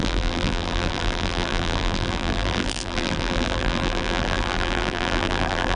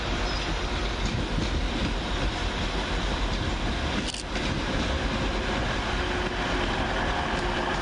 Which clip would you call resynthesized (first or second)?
first